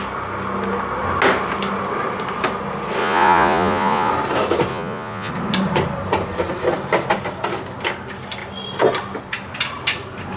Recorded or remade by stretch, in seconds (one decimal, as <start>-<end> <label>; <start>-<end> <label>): 0.0-3.0 recorded; 3.0-4.1 remade; 4.1-4.7 recorded; 4.7-5.3 remade; 5.3-10.4 recorded